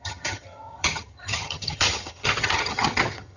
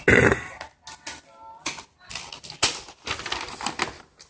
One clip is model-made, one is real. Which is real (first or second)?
second